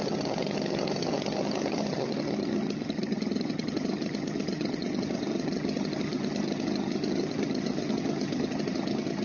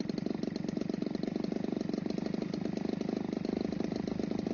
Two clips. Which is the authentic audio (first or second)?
second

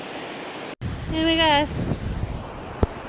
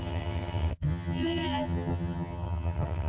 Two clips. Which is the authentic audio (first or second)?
first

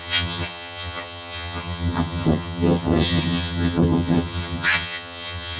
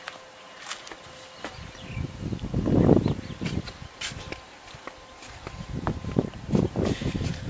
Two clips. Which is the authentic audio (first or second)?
second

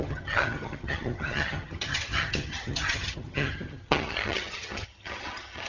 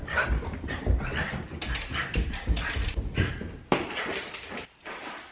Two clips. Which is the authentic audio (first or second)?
second